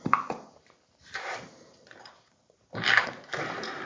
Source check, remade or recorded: remade